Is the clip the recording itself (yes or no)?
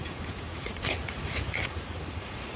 no